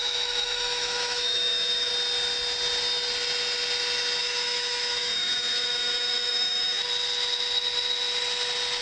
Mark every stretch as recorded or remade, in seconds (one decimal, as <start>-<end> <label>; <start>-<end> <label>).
0.0-1.9 remade; 1.9-4.2 recorded; 4.2-6.8 remade; 6.8-8.8 recorded